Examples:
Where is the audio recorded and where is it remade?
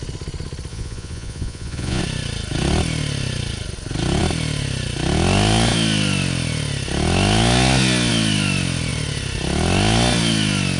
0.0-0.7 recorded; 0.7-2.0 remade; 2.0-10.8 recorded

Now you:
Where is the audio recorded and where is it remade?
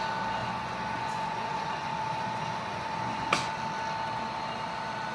0.0-0.4 recorded; 0.4-3.5 remade; 3.5-5.1 recorded